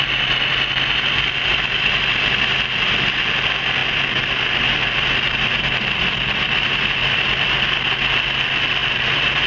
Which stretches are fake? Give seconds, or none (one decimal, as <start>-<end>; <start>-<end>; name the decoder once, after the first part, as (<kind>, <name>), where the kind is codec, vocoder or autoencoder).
3.8-8.0 (vocoder, BigVGAN v2); 8.8-9.5